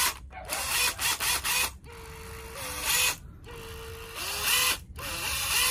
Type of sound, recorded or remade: recorded